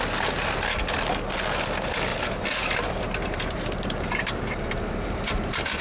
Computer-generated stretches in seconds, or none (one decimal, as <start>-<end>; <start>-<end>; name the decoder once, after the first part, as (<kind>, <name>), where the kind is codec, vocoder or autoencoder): 2.1-5.8 (vocoder, BigVGAN v2)